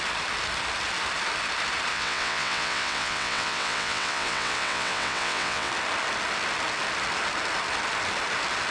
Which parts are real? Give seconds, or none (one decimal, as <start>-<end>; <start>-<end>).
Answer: 0.0-1.9; 5.7-8.7